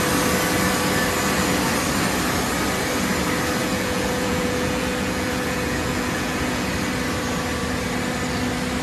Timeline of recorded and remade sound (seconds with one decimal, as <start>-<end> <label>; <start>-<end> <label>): 0.0-3.6 recorded; 3.6-6.7 remade; 6.7-8.8 recorded